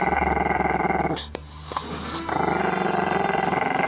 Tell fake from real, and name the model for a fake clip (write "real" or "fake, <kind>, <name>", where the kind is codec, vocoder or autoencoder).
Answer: real